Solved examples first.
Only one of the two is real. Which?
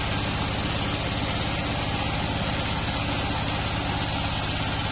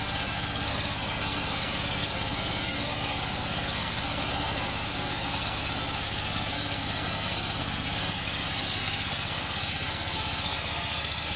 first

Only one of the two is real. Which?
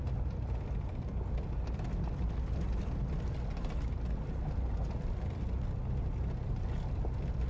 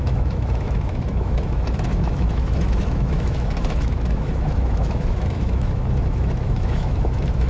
first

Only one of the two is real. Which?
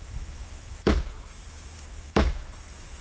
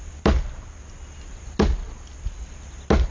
second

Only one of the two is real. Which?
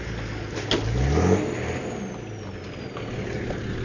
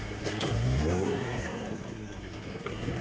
first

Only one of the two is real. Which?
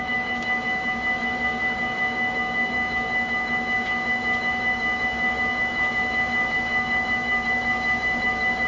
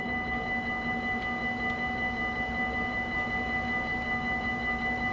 second